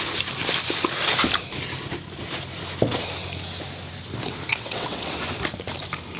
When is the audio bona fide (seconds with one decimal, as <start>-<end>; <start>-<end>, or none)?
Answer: 0.0-4.5; 5.2-6.2